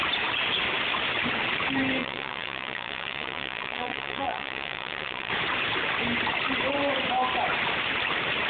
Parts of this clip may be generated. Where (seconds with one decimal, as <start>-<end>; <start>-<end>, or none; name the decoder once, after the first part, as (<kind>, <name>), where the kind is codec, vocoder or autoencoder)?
2.0-5.3 (vocoder, Vocos)